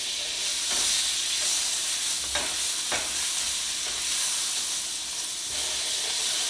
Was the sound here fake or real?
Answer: real